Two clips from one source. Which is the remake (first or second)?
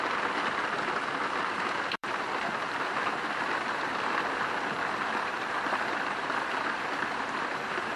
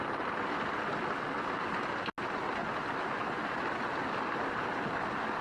first